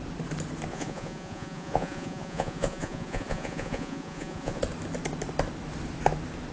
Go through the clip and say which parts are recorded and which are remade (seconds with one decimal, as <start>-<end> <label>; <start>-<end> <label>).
0.0-0.7 recorded; 0.7-4.6 remade; 4.6-6.5 recorded